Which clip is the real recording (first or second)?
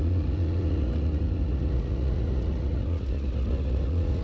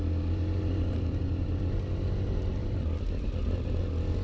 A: second